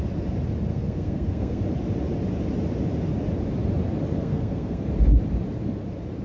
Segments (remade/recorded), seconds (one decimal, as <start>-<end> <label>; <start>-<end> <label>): 0.0-0.7 recorded; 0.7-1.6 remade; 1.6-4.2 recorded; 4.2-4.8 remade; 4.8-6.2 recorded